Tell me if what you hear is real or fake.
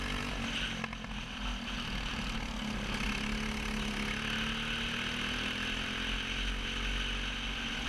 real